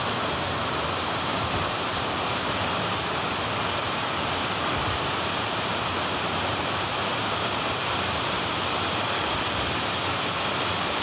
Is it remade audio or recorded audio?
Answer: remade